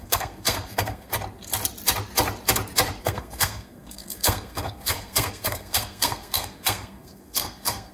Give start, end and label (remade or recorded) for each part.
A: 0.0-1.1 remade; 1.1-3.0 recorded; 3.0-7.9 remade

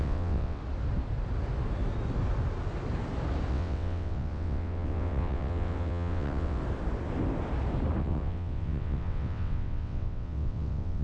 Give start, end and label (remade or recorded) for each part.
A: 0.0-0.6 remade; 0.6-3.5 recorded; 3.5-6.6 remade; 6.6-8.0 recorded; 8.0-11.0 remade

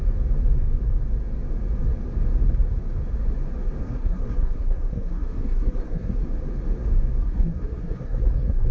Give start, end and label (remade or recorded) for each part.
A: 0.0-3.8 recorded; 3.8-6.2 remade; 6.2-7.2 recorded; 7.2-8.7 remade

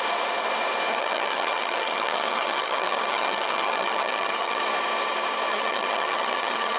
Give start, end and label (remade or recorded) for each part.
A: 0.0-0.9 recorded; 0.9-4.6 remade; 4.6-5.5 recorded; 5.5-6.8 remade

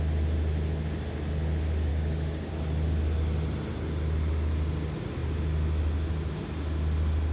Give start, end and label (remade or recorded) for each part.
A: 0.0-1.9 recorded; 1.9-2.5 remade; 2.5-7.3 recorded

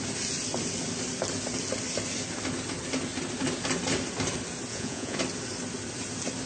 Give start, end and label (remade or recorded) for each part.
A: 0.0-4.7 recorded; 4.7-5.2 remade; 5.2-6.5 recorded